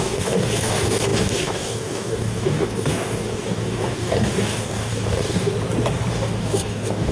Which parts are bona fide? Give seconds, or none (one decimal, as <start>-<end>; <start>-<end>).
5.5-6.1